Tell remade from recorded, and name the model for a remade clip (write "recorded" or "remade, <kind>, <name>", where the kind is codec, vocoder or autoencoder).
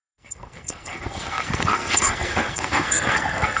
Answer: remade, codec, SNAC